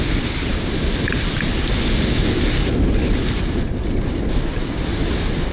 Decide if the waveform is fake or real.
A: real